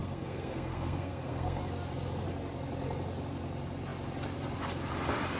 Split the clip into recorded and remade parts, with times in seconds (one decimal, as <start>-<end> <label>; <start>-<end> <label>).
0.0-1.6 remade; 1.6-5.4 recorded